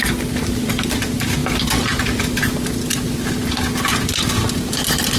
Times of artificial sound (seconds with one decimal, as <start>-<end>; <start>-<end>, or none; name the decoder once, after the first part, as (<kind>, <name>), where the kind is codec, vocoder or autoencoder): none